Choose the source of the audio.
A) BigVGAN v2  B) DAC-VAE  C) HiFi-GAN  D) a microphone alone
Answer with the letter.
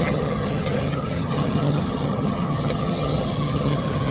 C